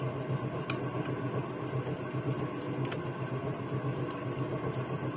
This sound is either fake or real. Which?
real